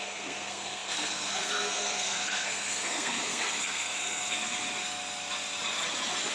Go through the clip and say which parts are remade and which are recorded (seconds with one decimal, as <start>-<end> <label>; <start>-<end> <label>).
0.0-4.5 remade; 4.5-6.3 recorded